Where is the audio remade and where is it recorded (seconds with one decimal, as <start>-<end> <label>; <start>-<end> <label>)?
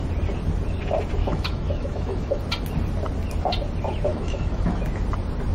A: 0.0-1.2 recorded; 1.2-2.4 remade; 2.4-4.1 recorded; 4.1-4.8 remade; 4.8-5.5 recorded